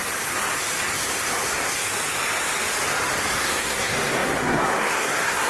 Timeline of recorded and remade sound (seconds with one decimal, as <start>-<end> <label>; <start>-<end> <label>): 0.0-3.3 recorded; 3.3-5.5 remade